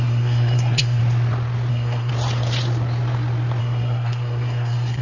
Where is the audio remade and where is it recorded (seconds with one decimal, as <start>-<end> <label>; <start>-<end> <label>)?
0.0-1.0 remade; 1.0-1.7 recorded; 1.7-2.1 remade; 2.1-3.6 recorded; 3.6-5.0 remade